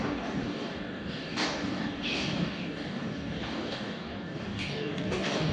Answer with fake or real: fake